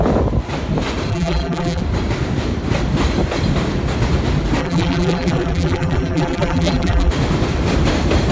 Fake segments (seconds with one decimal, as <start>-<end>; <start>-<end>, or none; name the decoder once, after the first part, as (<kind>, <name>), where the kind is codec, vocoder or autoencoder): 1.1-1.8 (vocoder, BigVGAN v2); 4.6-7.1